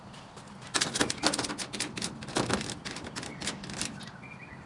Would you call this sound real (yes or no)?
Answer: yes